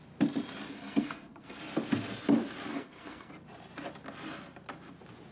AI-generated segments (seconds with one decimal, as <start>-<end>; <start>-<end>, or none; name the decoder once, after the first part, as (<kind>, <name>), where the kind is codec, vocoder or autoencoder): 0.7-1.6 (codec, SNAC); 2.7-3.3